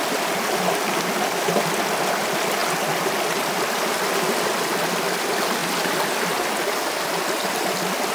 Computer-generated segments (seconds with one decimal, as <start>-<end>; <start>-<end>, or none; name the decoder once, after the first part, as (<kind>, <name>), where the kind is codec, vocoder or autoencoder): none